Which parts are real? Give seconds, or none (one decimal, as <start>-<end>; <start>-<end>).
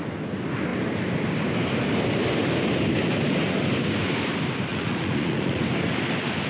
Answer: 0.0-4.7; 5.6-6.5